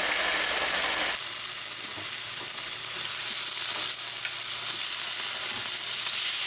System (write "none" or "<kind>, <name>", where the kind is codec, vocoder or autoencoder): none